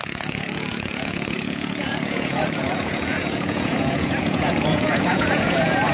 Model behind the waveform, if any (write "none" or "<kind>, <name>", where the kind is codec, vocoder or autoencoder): vocoder, Vocos